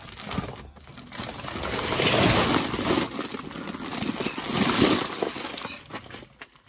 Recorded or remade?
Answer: recorded